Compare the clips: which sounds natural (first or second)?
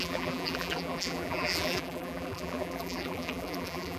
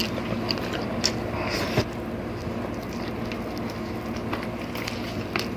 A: second